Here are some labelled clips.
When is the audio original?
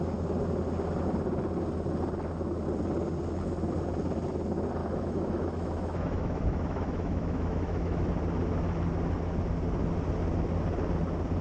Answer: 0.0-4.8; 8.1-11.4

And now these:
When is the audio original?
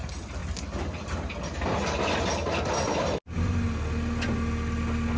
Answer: 0.0-5.2